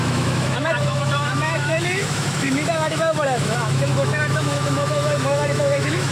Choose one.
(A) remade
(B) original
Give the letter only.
A